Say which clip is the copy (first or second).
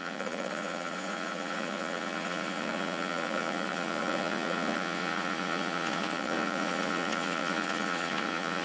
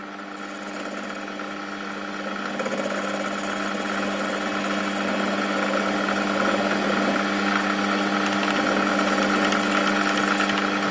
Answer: first